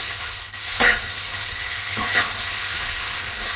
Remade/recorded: remade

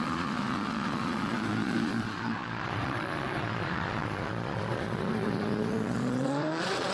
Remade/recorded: remade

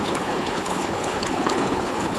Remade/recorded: remade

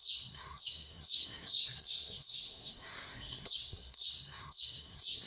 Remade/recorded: remade